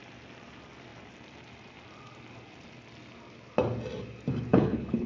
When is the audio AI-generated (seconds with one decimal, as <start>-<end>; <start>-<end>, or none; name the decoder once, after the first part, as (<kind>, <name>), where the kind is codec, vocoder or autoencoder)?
4.5-5.1 (codec, HILCodec)